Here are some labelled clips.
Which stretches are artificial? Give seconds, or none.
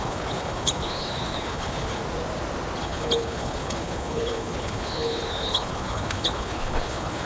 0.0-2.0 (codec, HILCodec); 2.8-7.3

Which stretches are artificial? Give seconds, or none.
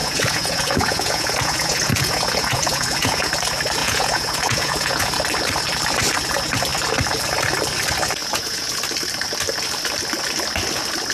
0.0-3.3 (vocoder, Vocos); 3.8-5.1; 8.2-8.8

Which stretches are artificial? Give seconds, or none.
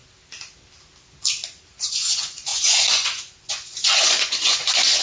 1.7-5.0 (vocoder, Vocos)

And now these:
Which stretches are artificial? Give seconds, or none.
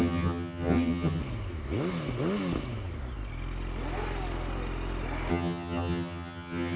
0.0-1.2 (vocoder, HiFi-GAN); 5.3-6.8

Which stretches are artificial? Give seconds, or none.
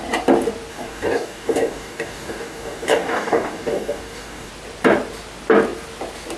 0.7-4.5 (codec, DAC)